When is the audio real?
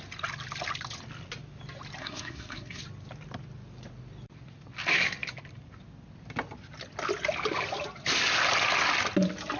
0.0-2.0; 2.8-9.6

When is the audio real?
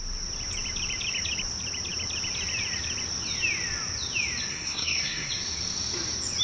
0.0-4.5; 5.3-6.4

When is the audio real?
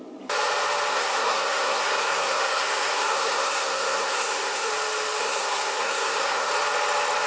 0.0-0.9; 4.7-5.2; 6.5-7.3